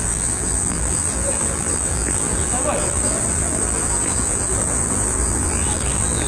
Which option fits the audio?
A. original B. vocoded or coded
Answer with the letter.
B